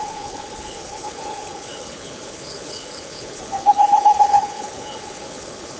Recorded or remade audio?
remade